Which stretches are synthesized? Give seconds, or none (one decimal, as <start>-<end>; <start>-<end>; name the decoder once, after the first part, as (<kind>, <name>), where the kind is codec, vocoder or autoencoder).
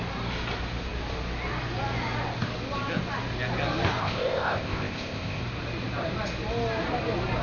4.0-5.4 (codec, ZipCodec)